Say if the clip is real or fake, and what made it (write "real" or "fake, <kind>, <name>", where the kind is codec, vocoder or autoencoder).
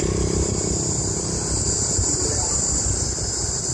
real